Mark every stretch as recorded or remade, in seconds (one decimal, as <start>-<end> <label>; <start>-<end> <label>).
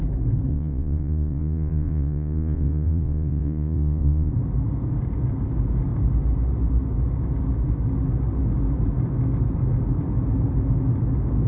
0.0-0.5 recorded; 0.5-4.3 remade; 4.3-11.5 recorded